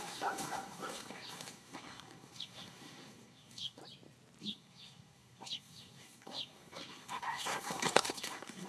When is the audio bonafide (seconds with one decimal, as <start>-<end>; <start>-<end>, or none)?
3.8-4.4